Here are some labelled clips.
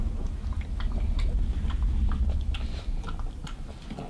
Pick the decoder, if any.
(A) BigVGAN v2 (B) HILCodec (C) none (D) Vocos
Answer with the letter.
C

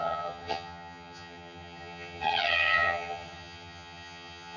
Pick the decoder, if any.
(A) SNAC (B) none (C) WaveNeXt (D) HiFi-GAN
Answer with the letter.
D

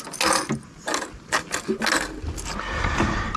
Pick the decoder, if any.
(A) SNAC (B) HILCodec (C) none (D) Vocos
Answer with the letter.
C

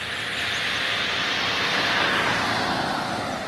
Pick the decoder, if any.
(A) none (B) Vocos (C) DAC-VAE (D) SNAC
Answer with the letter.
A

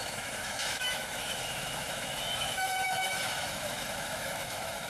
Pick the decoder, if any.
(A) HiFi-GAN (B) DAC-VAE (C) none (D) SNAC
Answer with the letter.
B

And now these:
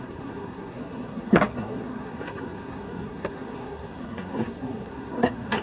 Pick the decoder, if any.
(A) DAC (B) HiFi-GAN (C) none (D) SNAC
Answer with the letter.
D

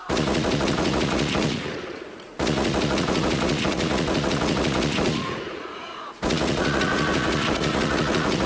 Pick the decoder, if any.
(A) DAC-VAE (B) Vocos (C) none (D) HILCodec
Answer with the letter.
B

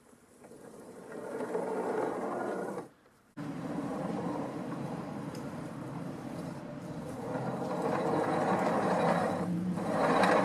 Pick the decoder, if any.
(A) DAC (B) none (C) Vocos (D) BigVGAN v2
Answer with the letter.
D